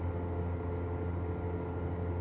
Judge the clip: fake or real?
real